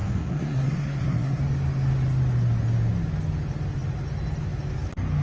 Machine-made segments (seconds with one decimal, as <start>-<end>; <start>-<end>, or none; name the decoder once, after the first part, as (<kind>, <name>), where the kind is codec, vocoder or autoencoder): 0.0-1.4 (codec, SNAC)